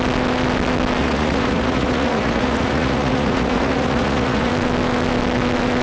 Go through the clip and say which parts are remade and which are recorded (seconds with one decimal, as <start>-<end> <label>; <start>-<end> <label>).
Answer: 0.0-1.0 recorded; 1.0-4.5 remade; 4.5-5.8 recorded